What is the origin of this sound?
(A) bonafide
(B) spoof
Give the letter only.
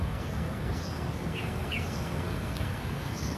B